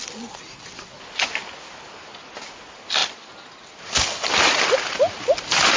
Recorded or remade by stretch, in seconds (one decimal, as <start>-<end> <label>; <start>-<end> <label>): 0.0-5.8 recorded